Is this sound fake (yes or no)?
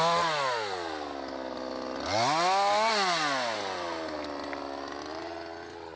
no